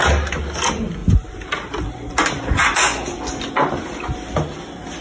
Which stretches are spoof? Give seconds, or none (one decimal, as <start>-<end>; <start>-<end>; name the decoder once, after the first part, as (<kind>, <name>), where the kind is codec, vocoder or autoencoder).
none

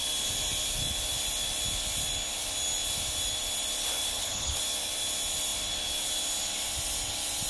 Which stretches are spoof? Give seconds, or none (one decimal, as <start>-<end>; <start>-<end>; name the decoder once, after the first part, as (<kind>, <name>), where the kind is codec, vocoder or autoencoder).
4.1-4.6 (codec, HILCodec)

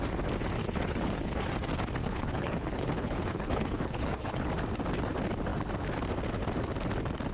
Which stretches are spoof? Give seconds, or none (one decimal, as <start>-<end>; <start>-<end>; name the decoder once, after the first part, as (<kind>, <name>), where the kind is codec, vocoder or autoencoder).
0.6-1.5 (codec, HILCodec); 2.0-4.5

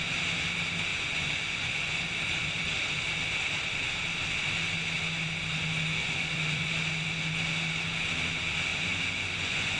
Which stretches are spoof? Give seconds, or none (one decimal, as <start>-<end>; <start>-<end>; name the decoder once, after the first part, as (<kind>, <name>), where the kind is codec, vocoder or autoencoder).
0.9-2.0 (vocoder, Vocos); 6.0-6.7; 8.7-9.8